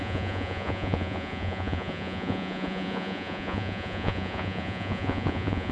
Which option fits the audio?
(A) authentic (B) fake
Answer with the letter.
B